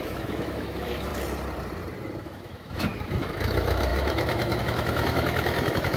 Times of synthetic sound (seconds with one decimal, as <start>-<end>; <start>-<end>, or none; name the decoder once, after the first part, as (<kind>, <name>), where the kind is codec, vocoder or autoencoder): 0.0-1.1 (autoencoder, DAC-VAE); 2.2-6.0

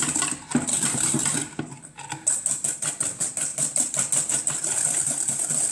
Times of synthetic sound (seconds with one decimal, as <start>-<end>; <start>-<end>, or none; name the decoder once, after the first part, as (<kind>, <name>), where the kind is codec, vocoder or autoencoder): 0.7-1.6 (vocoder, BigVGAN v2); 3.5-4.3